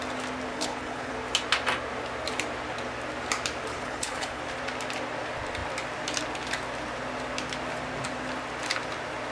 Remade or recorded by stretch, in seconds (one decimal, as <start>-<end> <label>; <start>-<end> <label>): 0.0-0.5 recorded; 0.5-1.1 remade; 1.1-3.7 recorded; 3.7-4.4 remade; 4.4-9.3 recorded